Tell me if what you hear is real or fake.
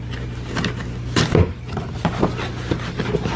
real